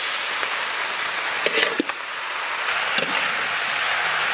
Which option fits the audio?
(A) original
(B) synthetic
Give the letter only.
A